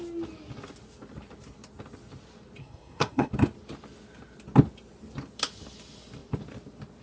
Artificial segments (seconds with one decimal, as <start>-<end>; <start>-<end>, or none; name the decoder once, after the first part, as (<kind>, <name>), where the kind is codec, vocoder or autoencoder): 2.6-3.3 (codec, SNAC)